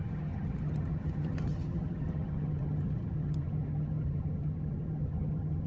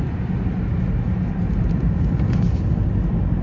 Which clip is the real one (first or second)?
second